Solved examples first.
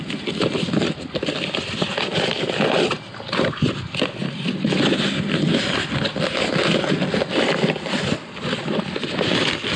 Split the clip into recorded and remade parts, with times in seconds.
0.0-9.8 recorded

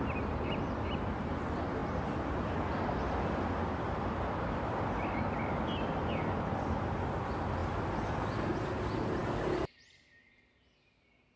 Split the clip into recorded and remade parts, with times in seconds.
0.0-11.4 recorded